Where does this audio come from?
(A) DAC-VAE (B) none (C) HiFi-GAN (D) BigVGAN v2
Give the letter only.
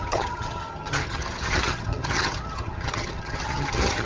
C